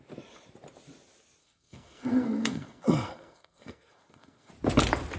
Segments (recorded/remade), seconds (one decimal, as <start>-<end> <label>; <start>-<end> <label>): 0.0-1.4 recorded; 1.4-4.5 remade; 4.5-5.2 recorded